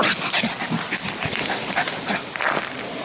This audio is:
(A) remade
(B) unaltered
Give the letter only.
B